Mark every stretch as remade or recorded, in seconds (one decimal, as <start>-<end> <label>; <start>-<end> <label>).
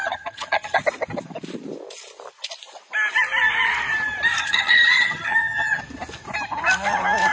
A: 0.0-0.8 remade; 0.8-4.4 recorded; 4.4-5.8 remade; 5.8-7.3 recorded